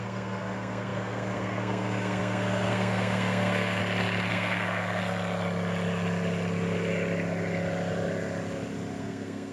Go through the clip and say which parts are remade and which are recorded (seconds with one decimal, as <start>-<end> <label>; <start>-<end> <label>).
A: 0.0-3.8 remade; 3.8-4.3 recorded; 4.3-5.0 remade; 5.0-9.0 recorded; 9.0-9.5 remade